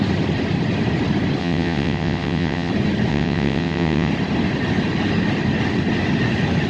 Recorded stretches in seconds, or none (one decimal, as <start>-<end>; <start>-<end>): 0.0-1.4; 2.7-3.1; 4.1-6.7